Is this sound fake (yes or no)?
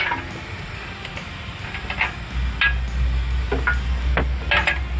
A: no